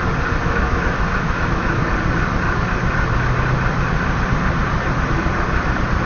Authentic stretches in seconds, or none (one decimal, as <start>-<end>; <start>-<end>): 0.0-0.4; 1.8-6.1